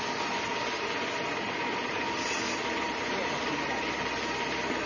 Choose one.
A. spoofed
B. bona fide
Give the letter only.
B